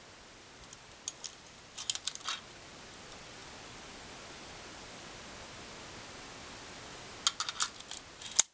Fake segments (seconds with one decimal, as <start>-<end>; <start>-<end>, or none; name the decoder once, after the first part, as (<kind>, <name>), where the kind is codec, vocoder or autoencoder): none